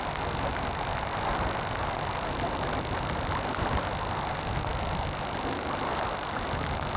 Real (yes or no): yes